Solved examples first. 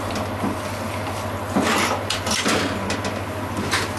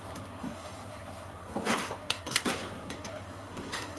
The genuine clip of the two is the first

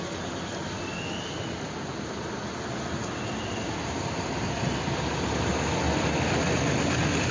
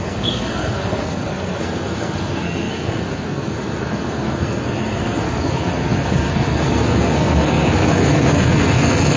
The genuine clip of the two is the first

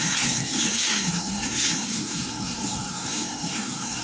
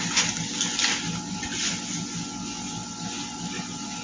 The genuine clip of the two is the second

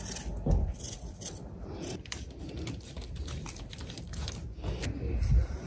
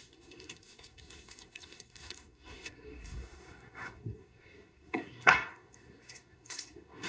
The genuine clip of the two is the first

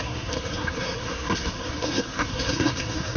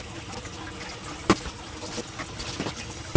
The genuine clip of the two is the second